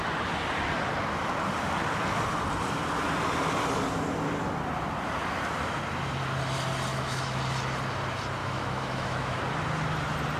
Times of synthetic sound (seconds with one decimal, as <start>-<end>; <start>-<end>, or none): 6.9-7.4; 8.4-9.4